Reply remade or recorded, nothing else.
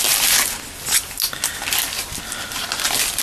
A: recorded